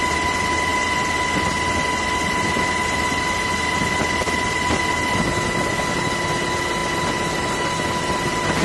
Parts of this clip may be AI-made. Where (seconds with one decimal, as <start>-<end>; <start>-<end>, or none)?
none